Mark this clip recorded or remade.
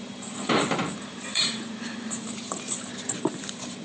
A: remade